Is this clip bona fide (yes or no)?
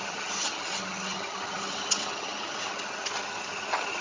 no